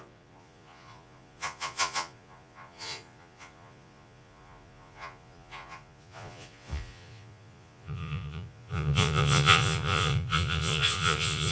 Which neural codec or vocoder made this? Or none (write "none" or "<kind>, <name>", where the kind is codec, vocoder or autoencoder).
vocoder, Vocos